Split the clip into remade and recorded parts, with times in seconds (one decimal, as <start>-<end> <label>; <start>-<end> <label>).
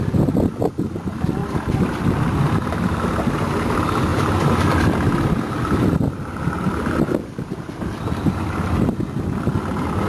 0.0-1.4 recorded; 1.4-3.5 remade; 3.5-4.1 recorded; 4.1-9.1 remade; 9.1-10.1 recorded